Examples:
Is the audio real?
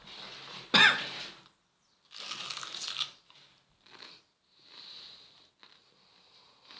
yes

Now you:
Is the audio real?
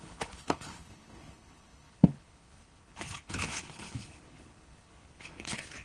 no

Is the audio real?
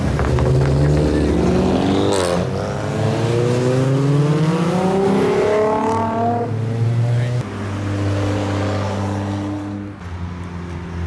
yes